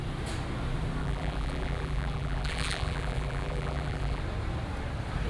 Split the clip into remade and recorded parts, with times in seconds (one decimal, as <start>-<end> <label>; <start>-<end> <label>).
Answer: 0.0-1.0 recorded; 1.0-4.2 remade; 4.2-5.3 recorded